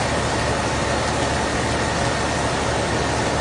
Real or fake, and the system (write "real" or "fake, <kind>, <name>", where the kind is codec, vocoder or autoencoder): real